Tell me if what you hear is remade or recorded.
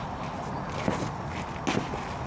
recorded